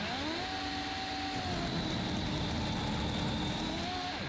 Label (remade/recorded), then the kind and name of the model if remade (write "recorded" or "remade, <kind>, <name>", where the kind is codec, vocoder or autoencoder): recorded